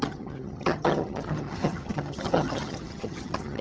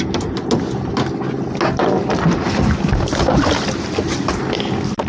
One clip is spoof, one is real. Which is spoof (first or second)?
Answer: first